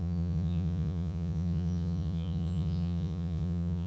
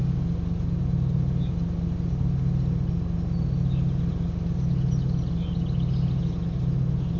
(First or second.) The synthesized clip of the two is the first